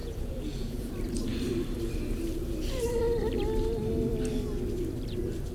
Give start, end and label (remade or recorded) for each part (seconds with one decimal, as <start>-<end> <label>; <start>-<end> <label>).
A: 0.0-0.9 remade; 0.9-5.5 recorded